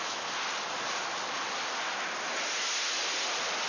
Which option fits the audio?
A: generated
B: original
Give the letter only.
B